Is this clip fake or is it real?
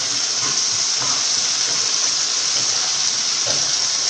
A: real